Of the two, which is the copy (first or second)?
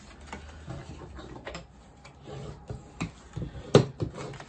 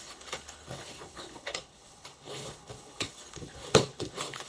second